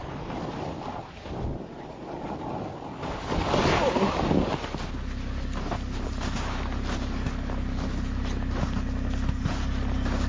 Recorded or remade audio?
recorded